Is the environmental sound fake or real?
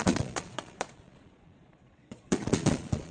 fake